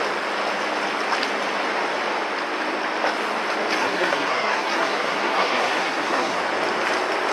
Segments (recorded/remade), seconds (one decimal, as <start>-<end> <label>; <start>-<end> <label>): 0.0-3.8 recorded; 3.8-6.4 remade; 6.4-7.3 recorded